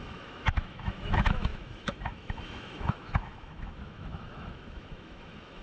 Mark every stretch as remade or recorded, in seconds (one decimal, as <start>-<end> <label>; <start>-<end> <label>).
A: 0.0-5.6 remade